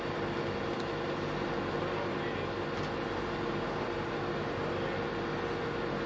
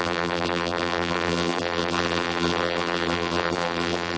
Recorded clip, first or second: first